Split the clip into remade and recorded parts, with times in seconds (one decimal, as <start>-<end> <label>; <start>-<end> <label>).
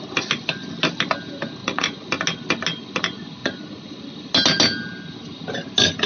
0.0-1.6 recorded; 1.6-2.1 remade; 2.1-3.4 recorded; 3.4-4.0 remade; 4.0-6.1 recorded